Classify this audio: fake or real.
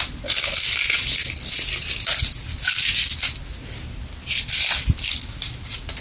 real